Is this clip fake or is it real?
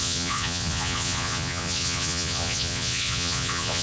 fake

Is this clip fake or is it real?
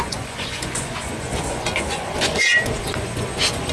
fake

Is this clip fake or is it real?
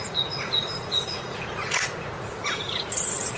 fake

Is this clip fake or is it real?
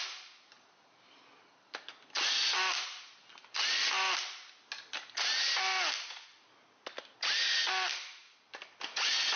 real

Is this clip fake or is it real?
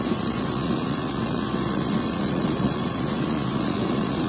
fake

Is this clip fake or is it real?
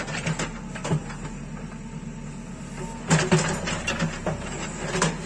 real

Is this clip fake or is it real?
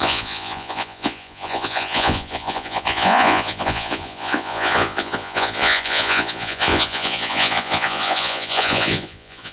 fake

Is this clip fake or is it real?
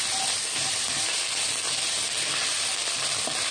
real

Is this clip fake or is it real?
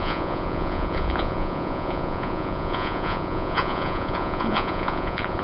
fake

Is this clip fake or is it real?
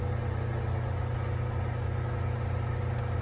real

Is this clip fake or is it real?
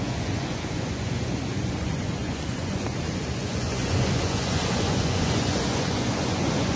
fake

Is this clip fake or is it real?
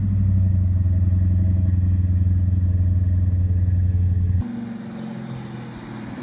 real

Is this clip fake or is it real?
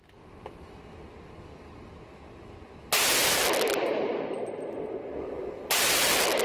real